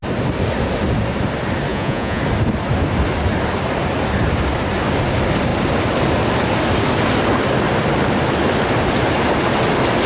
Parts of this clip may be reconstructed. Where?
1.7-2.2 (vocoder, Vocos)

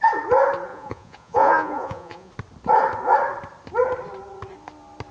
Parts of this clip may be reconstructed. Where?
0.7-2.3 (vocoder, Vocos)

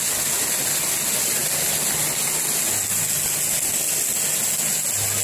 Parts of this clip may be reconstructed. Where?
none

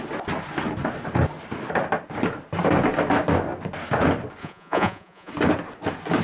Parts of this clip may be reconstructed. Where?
4.4-5.3 (vocoder, Vocos)

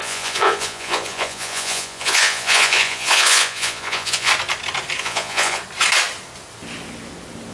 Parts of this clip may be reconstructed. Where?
0.0-4.3 (vocoder, Vocos); 5.0-5.6

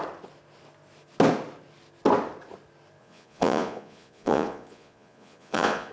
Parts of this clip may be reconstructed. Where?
3.0-5.9 (vocoder, Vocos)

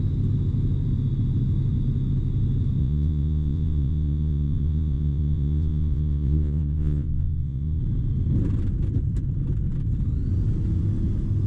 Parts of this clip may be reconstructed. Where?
2.8-7.8 (vocoder, Vocos)